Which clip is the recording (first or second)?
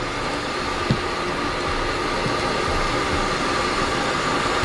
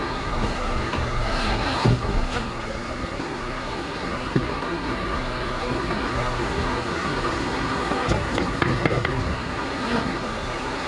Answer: first